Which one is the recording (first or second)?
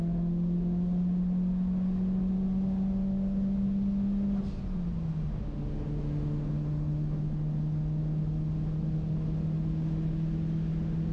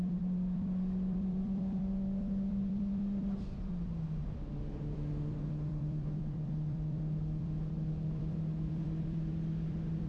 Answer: first